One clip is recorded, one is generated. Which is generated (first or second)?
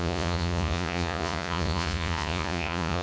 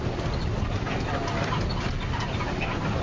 first